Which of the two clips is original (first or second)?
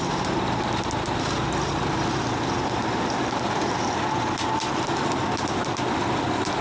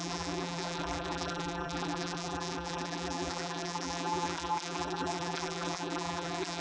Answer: first